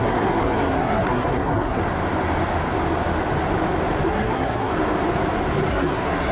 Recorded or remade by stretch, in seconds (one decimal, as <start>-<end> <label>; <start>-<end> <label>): 0.0-1.8 remade; 1.8-4.1 recorded; 4.1-4.7 remade; 4.7-5.7 recorded; 5.7-6.3 remade

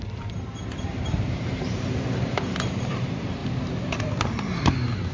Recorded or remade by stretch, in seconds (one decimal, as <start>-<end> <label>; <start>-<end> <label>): 0.0-3.4 remade; 3.4-4.0 recorded; 4.0-5.1 remade

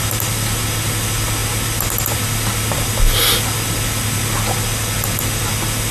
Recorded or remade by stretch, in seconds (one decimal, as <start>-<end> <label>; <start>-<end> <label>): 0.0-5.9 recorded

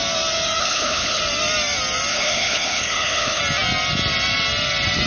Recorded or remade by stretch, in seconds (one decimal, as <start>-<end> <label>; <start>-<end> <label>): 0.0-0.6 recorded; 0.6-1.2 remade; 1.2-2.1 recorded; 2.1-3.4 remade; 3.4-5.1 recorded

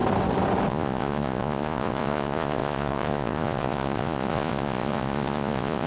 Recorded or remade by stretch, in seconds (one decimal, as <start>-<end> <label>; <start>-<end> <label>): 0.0-0.7 recorded; 0.7-5.9 remade

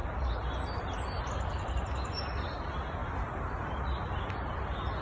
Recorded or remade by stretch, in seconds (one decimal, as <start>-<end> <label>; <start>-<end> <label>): 0.0-5.0 recorded

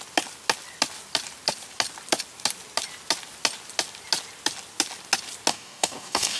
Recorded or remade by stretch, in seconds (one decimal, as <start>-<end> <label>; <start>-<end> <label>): 0.0-5.5 recorded; 5.5-6.4 remade

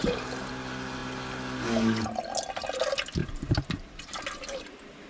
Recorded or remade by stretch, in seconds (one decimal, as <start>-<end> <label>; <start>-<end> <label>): 0.0-0.5 remade; 0.5-3.2 recorded; 3.2-4.2 remade; 4.2-5.1 recorded